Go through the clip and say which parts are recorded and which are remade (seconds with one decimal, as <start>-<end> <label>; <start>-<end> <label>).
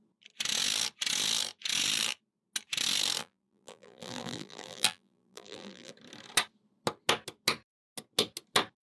0.0-3.2 recorded; 3.2-5.9 remade; 5.9-8.9 recorded